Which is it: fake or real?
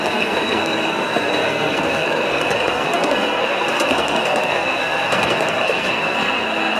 fake